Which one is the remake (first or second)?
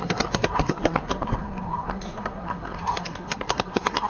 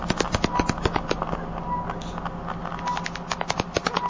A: first